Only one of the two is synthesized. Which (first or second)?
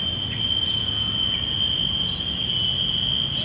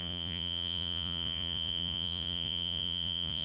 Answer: second